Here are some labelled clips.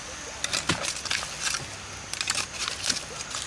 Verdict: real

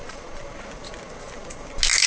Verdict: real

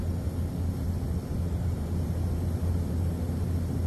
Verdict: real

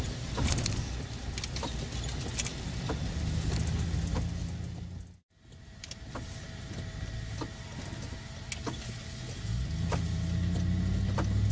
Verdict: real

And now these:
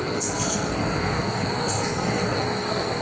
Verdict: fake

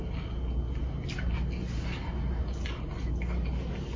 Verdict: real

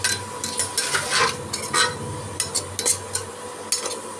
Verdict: real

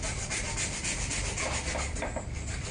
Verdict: real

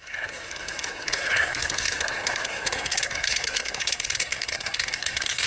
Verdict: fake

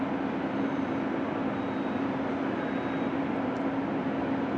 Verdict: real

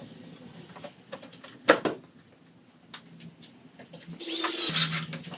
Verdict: real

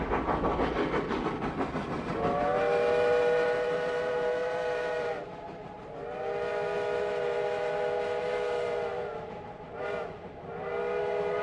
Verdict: real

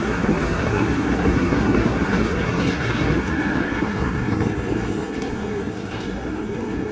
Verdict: fake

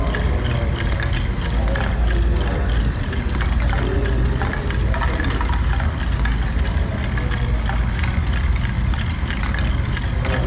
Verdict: real